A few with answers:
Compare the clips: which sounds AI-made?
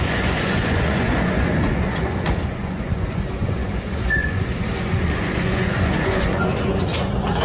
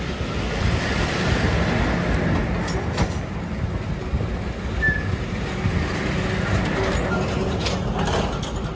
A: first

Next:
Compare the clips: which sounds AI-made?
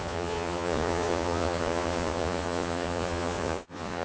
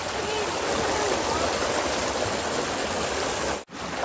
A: first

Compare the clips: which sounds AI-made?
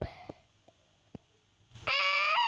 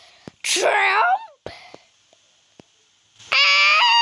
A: first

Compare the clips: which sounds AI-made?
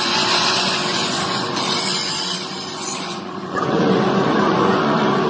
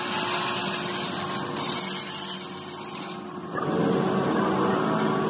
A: first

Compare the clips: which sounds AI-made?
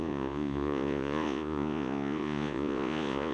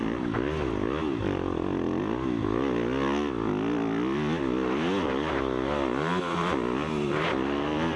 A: first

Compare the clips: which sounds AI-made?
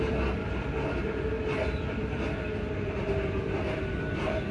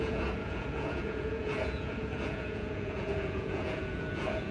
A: second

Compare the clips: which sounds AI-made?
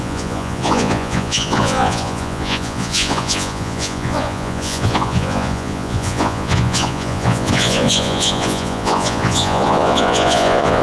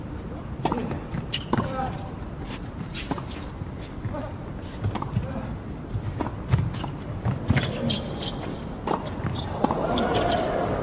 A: first